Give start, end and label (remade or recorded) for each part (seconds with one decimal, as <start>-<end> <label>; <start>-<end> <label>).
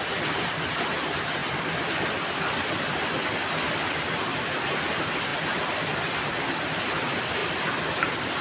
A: 0.0-8.4 recorded